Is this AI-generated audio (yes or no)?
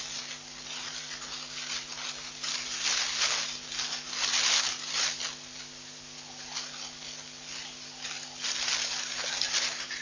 no